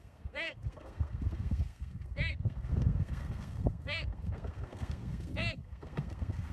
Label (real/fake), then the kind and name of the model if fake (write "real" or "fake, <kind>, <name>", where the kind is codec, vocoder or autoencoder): fake, codec, SNAC